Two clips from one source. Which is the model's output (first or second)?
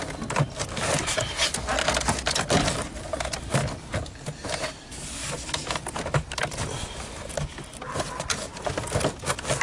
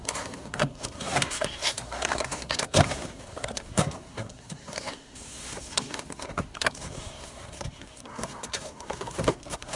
second